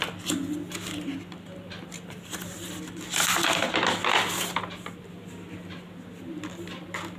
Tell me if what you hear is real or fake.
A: real